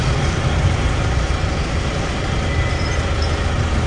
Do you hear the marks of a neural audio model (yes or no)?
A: no